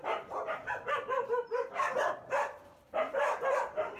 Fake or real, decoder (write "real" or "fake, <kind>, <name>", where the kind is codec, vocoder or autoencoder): fake, vocoder, BigVGAN v2